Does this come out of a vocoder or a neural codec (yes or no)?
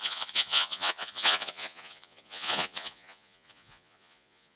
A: yes